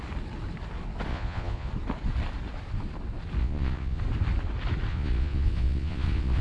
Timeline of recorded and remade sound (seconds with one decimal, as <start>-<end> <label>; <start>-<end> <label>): 0.0-1.1 recorded; 1.1-1.7 remade; 1.7-3.4 recorded; 3.4-4.0 remade; 4.0-4.9 recorded; 4.9-6.4 remade